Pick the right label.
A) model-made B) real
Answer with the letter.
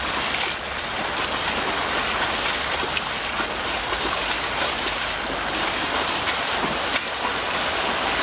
B